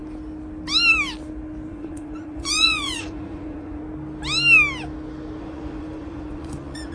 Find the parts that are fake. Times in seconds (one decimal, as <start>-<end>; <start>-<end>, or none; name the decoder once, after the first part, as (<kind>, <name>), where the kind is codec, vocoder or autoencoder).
1.7-3.8 (vocoder, Vocos); 5.4-6.9